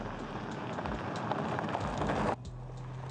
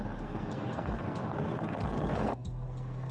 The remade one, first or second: second